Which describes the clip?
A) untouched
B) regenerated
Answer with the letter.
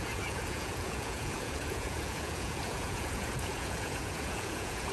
B